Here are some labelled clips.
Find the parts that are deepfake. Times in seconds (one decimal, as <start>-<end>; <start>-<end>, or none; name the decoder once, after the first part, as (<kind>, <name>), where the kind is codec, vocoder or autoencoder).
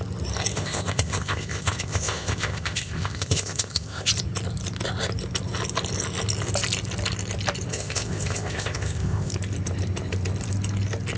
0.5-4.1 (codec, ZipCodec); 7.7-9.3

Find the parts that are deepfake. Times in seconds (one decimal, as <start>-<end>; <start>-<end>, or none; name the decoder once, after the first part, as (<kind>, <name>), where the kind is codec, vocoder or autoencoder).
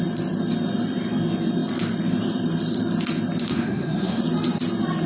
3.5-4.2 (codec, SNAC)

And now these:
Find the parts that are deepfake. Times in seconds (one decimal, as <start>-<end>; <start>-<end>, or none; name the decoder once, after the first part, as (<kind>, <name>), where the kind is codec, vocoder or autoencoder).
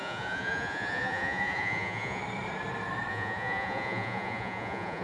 0.0-2.2 (vocoder, Vocos); 3.1-5.0